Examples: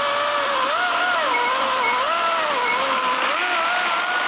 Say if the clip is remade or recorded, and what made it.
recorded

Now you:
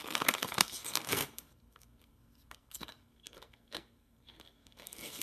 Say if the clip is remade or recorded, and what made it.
remade, codec, SNAC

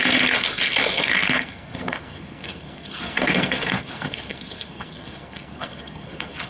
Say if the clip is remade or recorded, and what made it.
remade, codec, SNAC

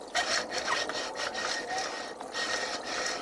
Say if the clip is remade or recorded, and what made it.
recorded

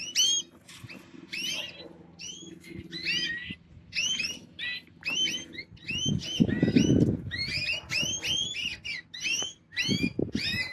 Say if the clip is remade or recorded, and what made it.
recorded